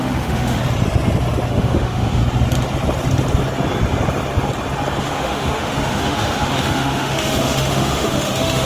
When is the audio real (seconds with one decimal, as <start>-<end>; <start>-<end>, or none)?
0.6-1.5; 2.2-5.0